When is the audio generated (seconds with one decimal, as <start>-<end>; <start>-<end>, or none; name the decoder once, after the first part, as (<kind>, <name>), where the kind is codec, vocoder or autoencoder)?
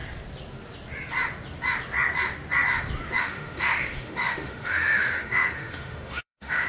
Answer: 3.2-6.7 (autoencoder, DAC-VAE)